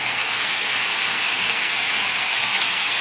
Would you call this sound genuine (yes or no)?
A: no